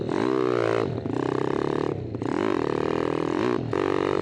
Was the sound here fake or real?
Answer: real